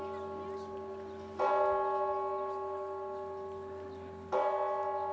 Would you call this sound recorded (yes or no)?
yes